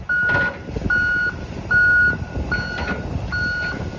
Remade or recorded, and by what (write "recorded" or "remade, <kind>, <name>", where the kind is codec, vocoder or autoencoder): recorded